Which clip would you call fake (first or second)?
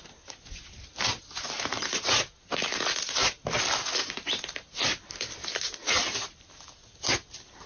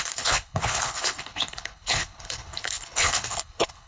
second